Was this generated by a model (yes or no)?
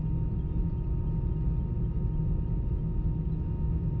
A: no